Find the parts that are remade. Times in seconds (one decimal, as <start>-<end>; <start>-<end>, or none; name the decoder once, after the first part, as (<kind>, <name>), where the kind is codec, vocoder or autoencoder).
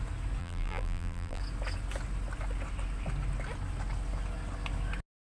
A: 0.4-1.4 (vocoder, BigVGAN v2)